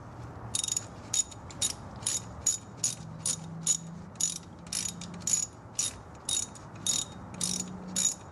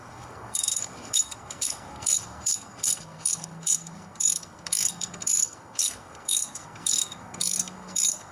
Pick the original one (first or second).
first